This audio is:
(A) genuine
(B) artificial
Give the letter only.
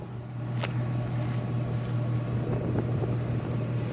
B